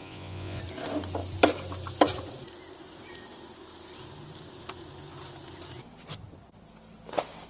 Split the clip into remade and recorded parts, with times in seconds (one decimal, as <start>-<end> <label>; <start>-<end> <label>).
0.0-0.6 remade; 0.6-7.5 recorded